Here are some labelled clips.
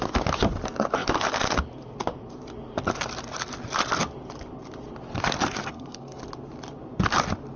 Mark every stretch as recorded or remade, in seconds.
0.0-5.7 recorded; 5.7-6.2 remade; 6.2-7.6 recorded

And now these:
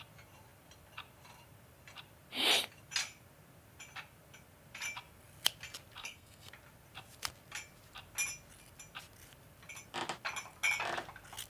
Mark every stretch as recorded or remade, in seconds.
0.0-6.0 recorded; 6.0-6.5 remade; 6.5-11.5 recorded

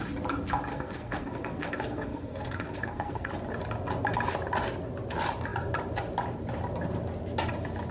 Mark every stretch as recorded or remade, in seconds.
0.0-0.7 recorded; 0.7-3.3 remade; 3.3-7.9 recorded

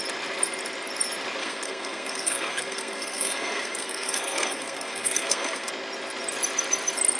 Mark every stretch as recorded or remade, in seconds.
0.0-1.4 recorded; 1.4-5.7 remade; 5.7-7.2 recorded